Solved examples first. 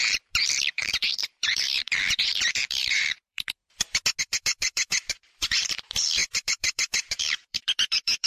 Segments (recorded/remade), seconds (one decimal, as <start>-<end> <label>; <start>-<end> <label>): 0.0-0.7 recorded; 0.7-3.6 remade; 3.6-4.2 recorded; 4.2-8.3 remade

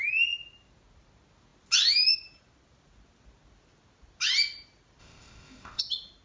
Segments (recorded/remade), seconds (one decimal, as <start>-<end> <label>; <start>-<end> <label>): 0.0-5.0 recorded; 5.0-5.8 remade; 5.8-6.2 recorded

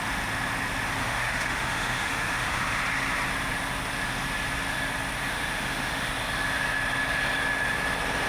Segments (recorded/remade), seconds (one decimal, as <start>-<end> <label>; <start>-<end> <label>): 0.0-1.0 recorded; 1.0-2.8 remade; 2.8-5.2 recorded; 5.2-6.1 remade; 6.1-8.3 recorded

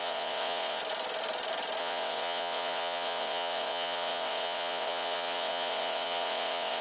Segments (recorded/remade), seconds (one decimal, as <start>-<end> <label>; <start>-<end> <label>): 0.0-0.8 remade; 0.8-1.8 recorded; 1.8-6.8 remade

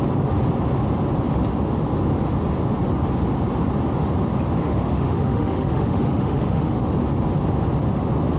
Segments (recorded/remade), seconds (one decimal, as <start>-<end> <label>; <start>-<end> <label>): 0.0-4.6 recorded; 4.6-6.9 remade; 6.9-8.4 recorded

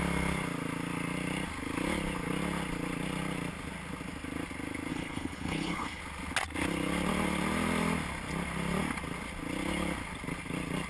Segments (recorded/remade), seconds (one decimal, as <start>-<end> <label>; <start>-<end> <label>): 0.0-4.9 recorded; 4.9-6.0 remade; 6.0-10.9 recorded

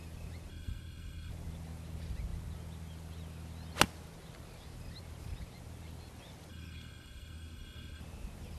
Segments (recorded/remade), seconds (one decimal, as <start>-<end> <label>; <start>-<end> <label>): 0.0-0.5 recorded; 0.5-1.3 remade; 1.3-6.5 recorded; 6.5-8.0 remade; 8.0-8.6 recorded

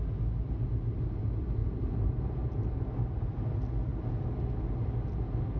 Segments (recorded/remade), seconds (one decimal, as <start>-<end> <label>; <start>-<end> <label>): 0.0-1.6 recorded; 1.6-3.5 remade; 3.5-5.6 recorded